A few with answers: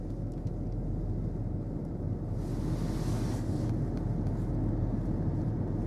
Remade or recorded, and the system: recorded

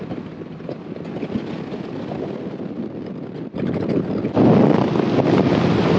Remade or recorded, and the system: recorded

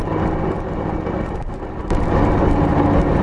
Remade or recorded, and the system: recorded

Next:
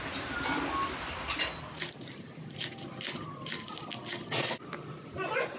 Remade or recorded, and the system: recorded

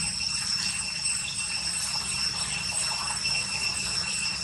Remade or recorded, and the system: recorded